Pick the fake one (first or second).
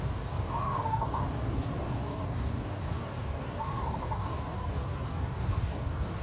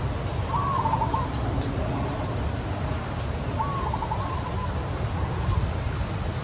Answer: first